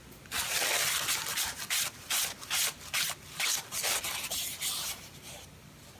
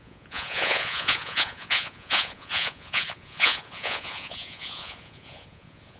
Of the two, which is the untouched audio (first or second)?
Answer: first